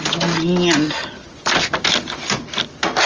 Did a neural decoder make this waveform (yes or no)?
no